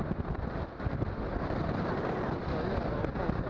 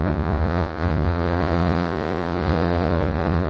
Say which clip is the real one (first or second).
first